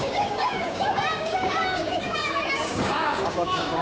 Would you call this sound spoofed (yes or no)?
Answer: yes